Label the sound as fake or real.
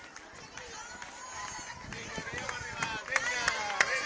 real